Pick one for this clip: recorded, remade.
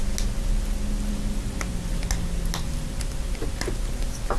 recorded